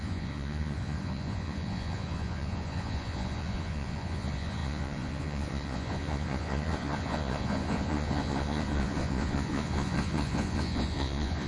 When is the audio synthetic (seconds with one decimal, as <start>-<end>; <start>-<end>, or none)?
0.0-11.5